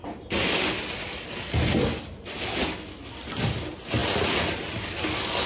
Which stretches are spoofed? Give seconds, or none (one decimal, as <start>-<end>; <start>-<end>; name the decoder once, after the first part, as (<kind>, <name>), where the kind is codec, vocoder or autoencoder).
none